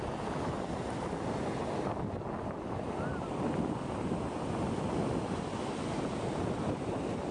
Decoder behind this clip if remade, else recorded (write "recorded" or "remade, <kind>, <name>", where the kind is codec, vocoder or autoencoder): recorded